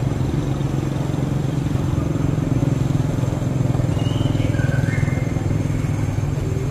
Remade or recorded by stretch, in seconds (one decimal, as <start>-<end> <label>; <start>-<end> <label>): 0.0-6.7 recorded